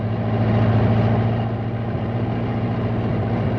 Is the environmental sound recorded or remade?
recorded